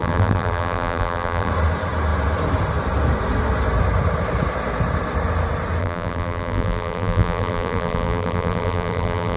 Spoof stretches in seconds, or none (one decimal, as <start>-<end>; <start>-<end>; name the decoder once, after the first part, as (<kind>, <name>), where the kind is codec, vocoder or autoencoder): 0.0-1.5 (vocoder, BigVGAN v2); 5.8-9.4